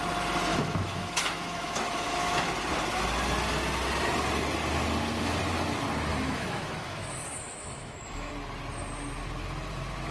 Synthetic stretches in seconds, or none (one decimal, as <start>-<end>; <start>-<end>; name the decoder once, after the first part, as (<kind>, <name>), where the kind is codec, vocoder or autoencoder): 0.5-2.5 (autoencoder, DAC-VAE); 6.1-8.3